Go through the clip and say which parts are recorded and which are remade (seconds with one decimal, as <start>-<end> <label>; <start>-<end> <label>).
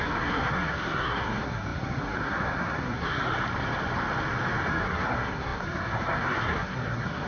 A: 0.0-3.3 remade; 3.3-4.7 recorded; 4.7-7.3 remade